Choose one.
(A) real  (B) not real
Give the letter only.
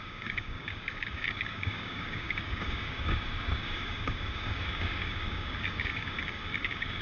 B